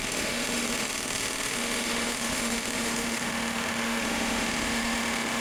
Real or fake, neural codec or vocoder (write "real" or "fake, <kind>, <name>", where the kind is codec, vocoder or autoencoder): fake, autoencoder, DAC-VAE